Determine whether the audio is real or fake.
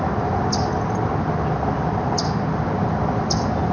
real